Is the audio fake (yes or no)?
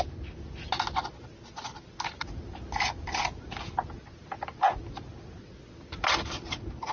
no